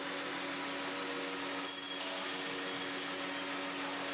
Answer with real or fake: real